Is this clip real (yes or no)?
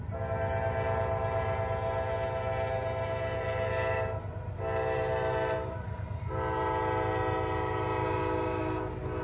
yes